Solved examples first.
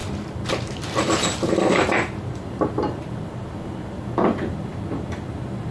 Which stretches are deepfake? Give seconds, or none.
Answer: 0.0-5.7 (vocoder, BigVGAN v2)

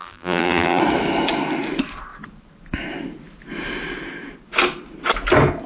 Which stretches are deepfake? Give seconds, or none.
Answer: 0.0-0.8 (vocoder, BigVGAN v2)

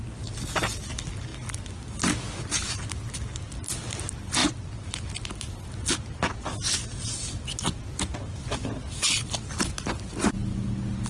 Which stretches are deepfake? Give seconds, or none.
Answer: none

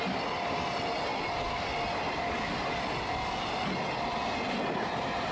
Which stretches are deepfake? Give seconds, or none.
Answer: none

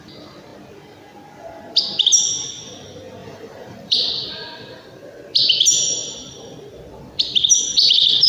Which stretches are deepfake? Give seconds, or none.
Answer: 3.2-4.3 (vocoder, BigVGAN v2)